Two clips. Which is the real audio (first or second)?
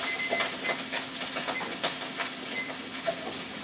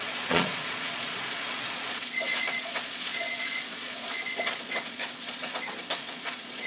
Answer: first